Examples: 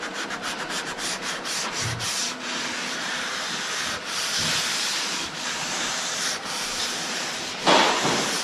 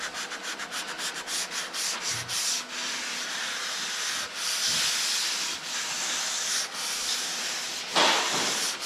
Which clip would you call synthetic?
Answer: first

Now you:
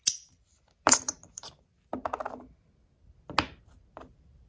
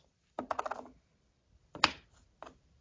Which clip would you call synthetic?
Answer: second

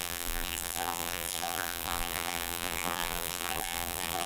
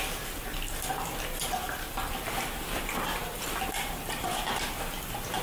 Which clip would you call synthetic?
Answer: first